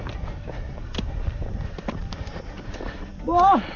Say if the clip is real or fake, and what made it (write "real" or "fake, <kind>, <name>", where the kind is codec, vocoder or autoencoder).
real